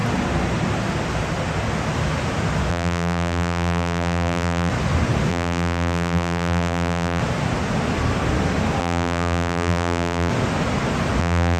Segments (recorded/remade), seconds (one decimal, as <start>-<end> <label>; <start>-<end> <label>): 0.0-2.7 recorded; 2.7-4.7 remade; 4.7-5.3 recorded; 5.3-7.2 remade; 7.2-8.8 recorded; 8.8-10.3 remade; 10.3-11.2 recorded; 11.2-11.6 remade